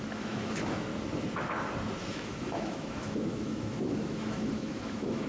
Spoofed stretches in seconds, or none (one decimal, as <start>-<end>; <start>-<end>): 0.0-0.9; 2.1-5.3